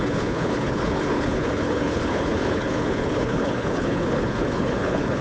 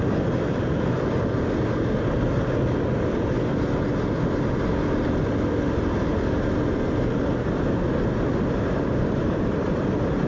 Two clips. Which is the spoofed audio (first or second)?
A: first